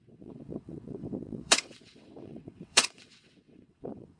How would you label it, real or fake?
fake